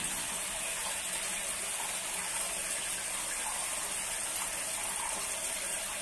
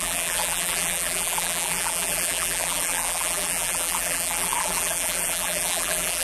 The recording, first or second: first